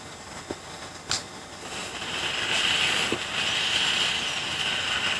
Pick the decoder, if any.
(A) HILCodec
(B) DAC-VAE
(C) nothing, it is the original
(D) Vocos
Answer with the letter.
C